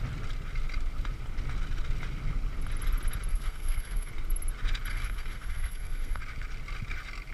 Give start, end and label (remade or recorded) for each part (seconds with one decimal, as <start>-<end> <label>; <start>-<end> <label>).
0.0-3.3 recorded; 3.3-4.1 remade; 4.1-4.9 recorded; 4.9-6.2 remade; 6.2-7.3 recorded

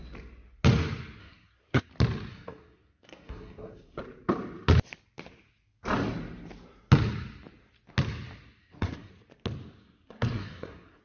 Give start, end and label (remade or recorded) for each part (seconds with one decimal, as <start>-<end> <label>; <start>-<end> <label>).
0.0-1.2 recorded; 1.2-1.9 remade; 1.9-2.3 recorded; 2.3-4.0 remade; 4.0-8.6 recorded; 8.6-9.1 remade; 9.1-9.8 recorded; 9.8-11.0 remade

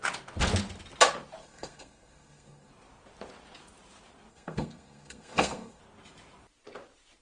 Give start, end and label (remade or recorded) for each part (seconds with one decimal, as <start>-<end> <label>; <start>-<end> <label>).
0.0-1.4 recorded; 1.4-2.7 remade; 2.7-4.3 recorded; 4.3-5.8 remade; 5.8-7.2 recorded

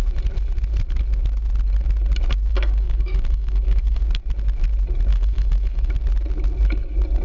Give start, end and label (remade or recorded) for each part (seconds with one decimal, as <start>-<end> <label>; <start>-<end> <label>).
0.0-2.5 recorded; 2.5-4.0 remade; 4.0-5.1 recorded; 5.1-5.9 remade; 5.9-7.2 recorded

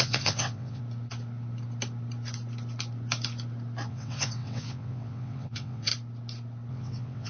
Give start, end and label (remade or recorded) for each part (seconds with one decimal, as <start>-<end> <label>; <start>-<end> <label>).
0.0-0.8 remade; 0.8-3.9 recorded; 3.9-5.9 remade; 5.9-6.7 recorded; 6.7-7.3 remade

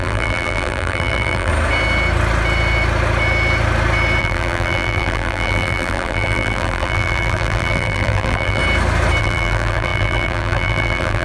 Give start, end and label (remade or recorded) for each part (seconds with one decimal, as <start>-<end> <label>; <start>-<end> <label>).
0.0-1.5 remade; 1.5-4.2 recorded; 4.2-8.6 remade; 8.6-9.2 recorded; 9.2-11.2 remade

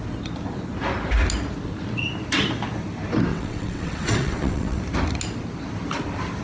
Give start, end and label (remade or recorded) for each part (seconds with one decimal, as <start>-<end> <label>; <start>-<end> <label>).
0.0-3.3 recorded; 3.3-4.8 remade; 4.8-6.4 recorded

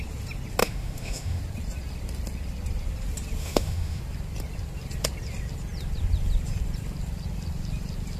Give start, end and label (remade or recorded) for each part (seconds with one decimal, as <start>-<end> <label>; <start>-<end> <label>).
0.0-0.6 recorded; 0.6-1.4 remade; 1.4-3.4 recorded; 3.4-4.0 remade; 4.0-8.2 recorded